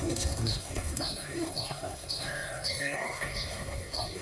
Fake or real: fake